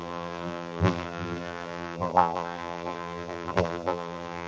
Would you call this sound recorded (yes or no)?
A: no